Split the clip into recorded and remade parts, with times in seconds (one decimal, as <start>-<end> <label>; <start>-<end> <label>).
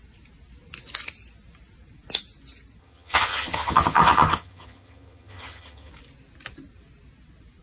0.0-2.8 recorded; 2.8-5.9 remade; 5.9-7.6 recorded